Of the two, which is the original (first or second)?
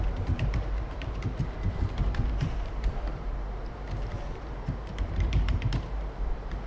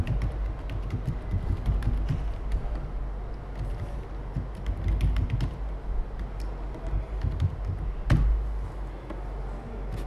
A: second